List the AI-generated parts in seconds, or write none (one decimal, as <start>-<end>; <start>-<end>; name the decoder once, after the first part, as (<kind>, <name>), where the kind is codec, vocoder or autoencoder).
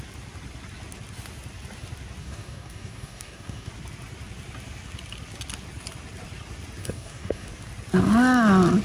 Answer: 2.2-3.7 (codec, DAC); 6.8-7.5